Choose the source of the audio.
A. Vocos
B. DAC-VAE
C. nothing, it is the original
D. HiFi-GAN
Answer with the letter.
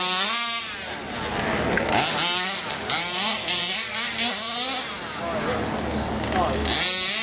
C